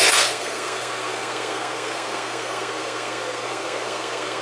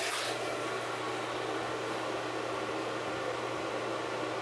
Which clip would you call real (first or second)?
second